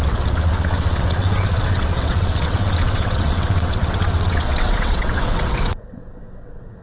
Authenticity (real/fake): fake